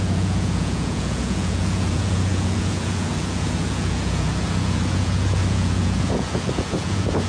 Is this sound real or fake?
fake